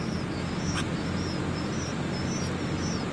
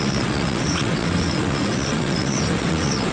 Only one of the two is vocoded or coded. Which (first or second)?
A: second